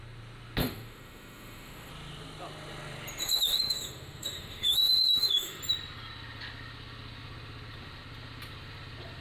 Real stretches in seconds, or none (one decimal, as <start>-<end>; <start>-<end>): 0.0-0.6; 1.9-3.2; 5.6-9.2